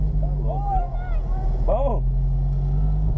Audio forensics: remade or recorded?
recorded